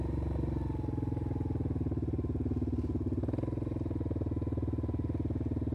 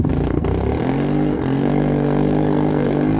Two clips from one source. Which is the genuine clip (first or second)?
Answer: first